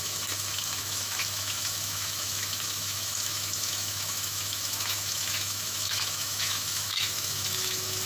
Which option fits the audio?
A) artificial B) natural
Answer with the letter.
A